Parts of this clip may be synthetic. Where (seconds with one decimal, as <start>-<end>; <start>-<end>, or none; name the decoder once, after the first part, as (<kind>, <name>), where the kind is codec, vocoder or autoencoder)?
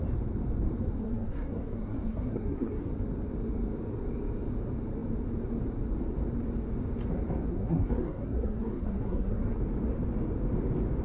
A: 1.0-2.9 (codec, SNAC); 7.5-9.6